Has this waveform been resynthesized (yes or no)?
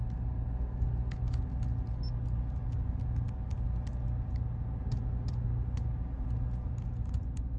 no